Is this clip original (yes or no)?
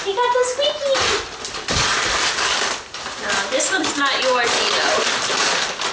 yes